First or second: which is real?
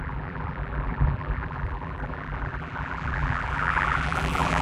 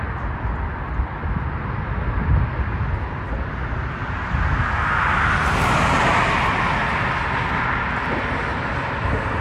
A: second